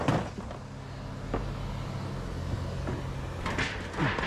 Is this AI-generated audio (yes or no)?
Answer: no